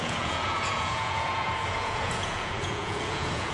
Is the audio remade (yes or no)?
yes